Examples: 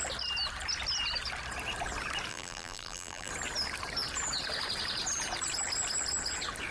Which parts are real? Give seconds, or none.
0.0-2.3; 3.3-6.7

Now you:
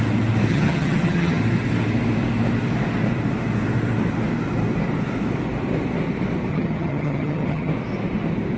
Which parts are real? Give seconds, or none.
0.0-0.5; 1.4-6.5; 7.7-8.6

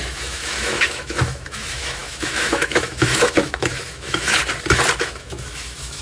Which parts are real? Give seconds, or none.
4.4-5.0

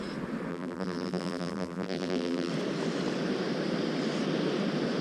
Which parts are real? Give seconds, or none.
0.0-0.5; 2.5-5.0

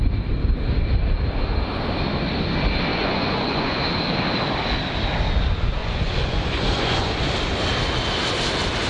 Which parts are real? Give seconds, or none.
0.0-2.9; 3.8-5.8; 7.3-8.9